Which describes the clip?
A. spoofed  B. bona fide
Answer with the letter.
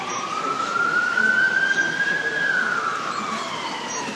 A